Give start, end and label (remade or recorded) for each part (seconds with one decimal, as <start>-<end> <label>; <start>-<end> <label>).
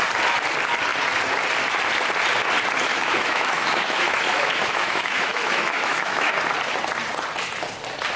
0.0-2.9 recorded; 2.9-6.3 remade; 6.3-8.2 recorded